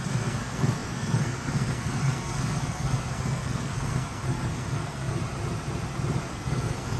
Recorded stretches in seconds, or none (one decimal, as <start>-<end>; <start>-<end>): 5.2-6.3